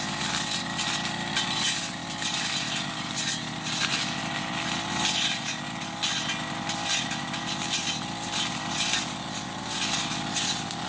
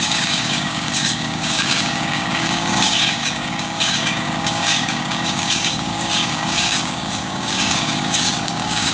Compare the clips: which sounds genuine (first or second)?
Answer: first